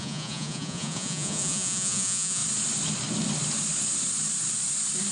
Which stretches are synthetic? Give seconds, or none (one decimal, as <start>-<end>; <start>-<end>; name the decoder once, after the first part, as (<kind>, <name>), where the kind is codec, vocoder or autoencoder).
0.0-2.4 (vocoder, Vocos)